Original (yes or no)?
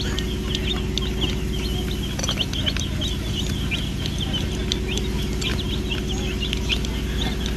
yes